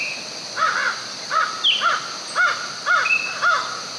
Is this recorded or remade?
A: recorded